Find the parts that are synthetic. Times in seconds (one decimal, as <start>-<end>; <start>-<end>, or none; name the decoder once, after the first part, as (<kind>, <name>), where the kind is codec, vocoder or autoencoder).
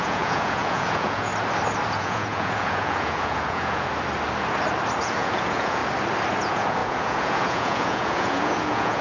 0.0-1.3 (vocoder, Vocos); 1.9-3.9; 5.0-5.8; 6.3-9.0